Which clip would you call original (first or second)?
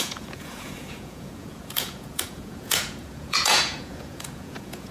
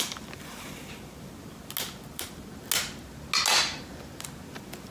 second